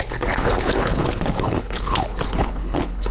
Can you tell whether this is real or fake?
fake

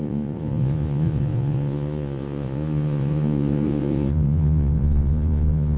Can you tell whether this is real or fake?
fake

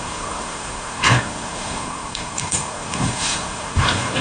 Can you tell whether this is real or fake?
fake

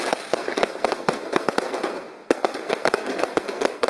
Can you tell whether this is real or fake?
fake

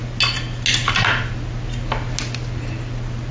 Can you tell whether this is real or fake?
real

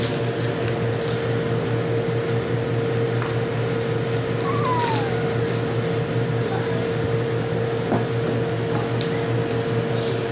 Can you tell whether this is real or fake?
real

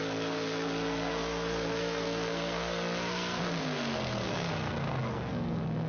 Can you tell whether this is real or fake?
fake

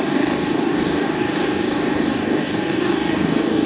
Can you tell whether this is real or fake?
fake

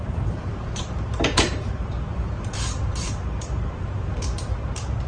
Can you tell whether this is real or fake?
fake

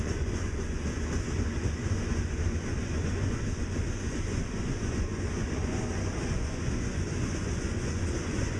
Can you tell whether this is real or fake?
fake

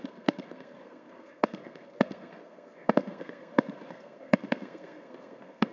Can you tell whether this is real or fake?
fake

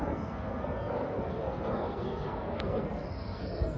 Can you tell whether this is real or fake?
fake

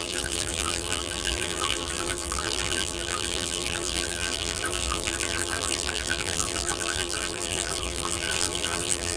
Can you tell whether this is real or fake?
fake